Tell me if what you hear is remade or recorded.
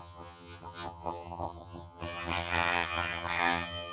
remade